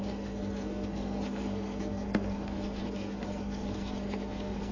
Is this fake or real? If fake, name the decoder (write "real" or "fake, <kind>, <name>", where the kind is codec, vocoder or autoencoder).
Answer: fake, codec, SNAC